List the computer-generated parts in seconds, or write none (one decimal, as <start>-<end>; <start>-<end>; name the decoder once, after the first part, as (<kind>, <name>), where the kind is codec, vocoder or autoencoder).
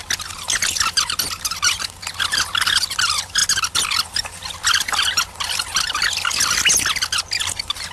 none